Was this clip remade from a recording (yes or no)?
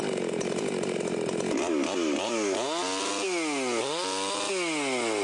no